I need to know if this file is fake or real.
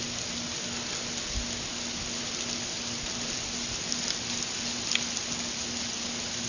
real